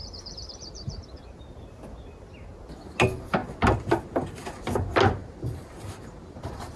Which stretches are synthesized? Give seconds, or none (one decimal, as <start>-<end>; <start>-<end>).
0.0-1.4; 5.2-6.8